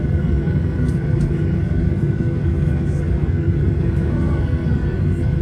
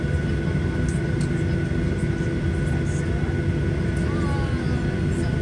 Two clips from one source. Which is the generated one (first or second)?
first